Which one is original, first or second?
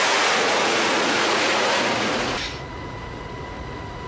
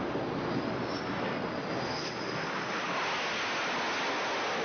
second